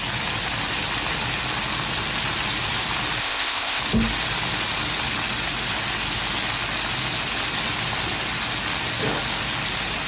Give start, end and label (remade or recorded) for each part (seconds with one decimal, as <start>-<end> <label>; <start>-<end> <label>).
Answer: 0.0-3.2 recorded; 3.2-3.8 remade; 3.8-10.1 recorded